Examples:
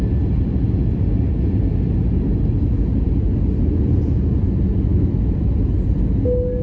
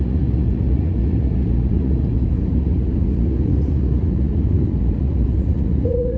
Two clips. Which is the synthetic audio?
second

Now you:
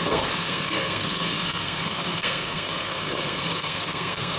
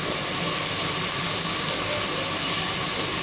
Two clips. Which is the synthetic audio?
first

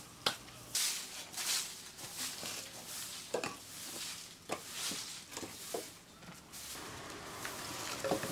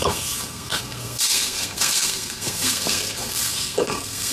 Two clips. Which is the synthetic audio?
second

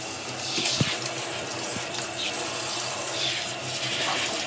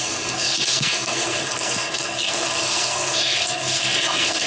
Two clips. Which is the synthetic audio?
second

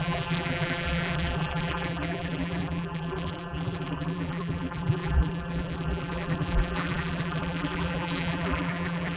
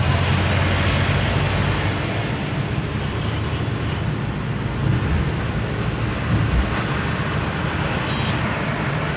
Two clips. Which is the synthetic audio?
first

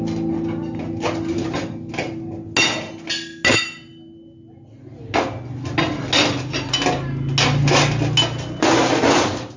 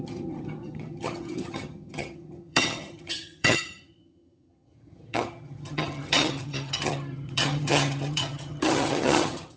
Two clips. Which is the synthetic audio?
second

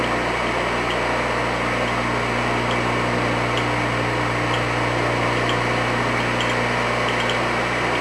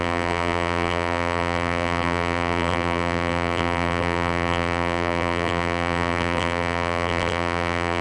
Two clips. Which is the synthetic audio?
second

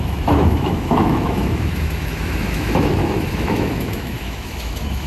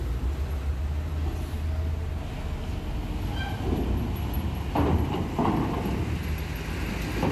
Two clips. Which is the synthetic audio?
first